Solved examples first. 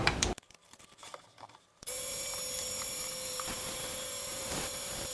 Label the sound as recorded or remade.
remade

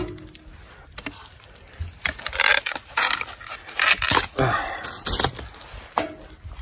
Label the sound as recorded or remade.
recorded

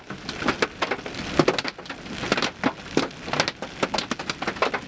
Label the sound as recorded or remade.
recorded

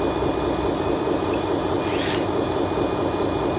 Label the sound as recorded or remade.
recorded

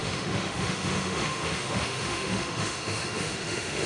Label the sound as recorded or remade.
remade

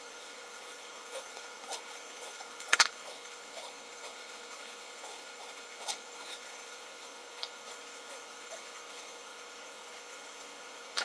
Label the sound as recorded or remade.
remade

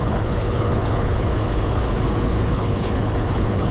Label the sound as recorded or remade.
remade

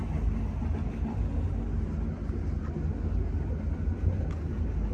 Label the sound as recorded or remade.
recorded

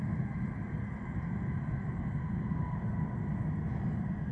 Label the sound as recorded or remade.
recorded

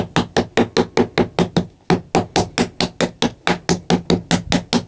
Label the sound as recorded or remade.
recorded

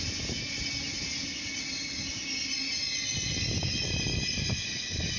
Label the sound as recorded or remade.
recorded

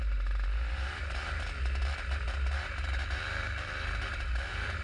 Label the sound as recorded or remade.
remade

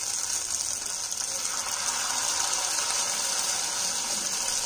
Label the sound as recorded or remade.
recorded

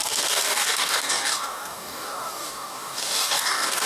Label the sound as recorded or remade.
remade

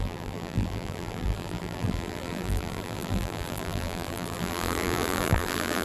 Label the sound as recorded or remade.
remade